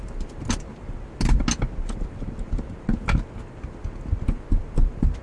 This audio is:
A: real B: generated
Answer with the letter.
A